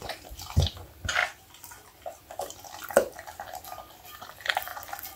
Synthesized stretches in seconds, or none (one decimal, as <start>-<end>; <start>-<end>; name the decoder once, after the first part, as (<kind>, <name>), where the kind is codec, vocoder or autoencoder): 4.7-5.2 (vocoder, BigVGAN v2)